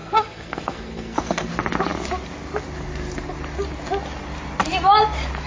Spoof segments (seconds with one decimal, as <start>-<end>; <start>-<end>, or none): 0.0-1.5